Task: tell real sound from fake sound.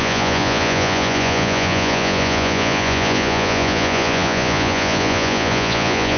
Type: fake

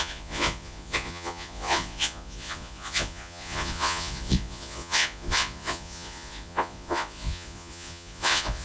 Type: fake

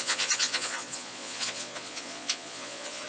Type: fake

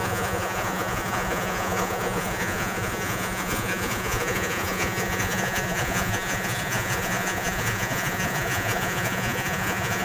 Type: fake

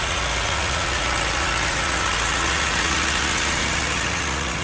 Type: fake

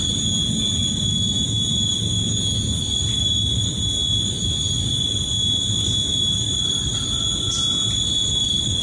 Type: real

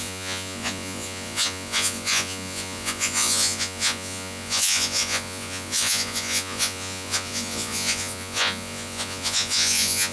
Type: fake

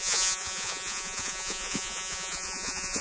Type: fake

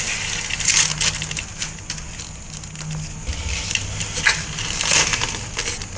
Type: real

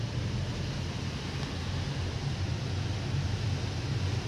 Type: real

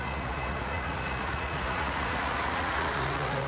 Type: fake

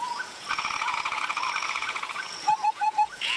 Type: fake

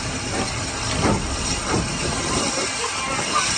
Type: real